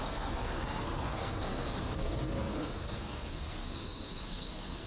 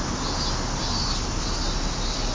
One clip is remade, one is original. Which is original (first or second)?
second